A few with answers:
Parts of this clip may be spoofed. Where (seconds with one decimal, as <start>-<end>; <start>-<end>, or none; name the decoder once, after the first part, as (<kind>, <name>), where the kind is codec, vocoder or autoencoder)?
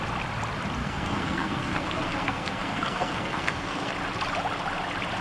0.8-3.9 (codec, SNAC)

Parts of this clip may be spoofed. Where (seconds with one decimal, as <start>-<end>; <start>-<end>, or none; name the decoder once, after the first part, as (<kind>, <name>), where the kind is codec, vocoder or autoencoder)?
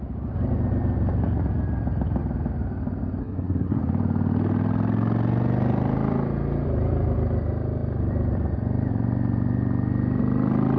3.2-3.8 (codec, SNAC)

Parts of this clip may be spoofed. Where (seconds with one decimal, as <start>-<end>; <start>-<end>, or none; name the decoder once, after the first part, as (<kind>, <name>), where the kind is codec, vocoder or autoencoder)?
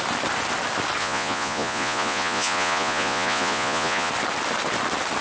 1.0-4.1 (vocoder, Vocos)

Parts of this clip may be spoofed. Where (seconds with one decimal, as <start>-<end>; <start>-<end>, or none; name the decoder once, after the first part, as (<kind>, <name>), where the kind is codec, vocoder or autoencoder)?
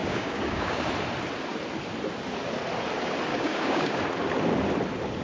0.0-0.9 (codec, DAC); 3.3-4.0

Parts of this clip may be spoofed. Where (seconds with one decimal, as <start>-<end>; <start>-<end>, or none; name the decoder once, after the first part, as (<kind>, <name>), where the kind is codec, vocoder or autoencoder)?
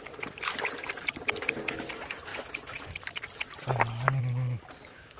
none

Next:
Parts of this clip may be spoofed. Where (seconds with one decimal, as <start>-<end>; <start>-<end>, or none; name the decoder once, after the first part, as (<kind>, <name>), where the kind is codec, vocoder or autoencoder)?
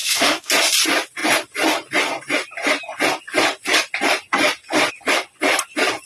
0.0-0.5 (codec, DAC)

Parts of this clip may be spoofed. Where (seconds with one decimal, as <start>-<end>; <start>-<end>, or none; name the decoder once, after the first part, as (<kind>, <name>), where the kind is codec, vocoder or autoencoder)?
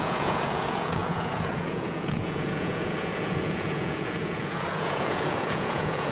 0.0-6.1 (vocoder, Vocos)